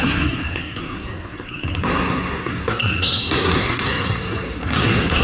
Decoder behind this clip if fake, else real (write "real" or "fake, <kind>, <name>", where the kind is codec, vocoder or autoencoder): fake, codec, SNAC